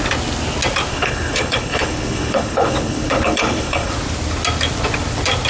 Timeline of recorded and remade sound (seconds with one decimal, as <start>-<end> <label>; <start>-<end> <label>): 0.0-0.9 recorded; 0.9-3.9 remade; 3.9-5.5 recorded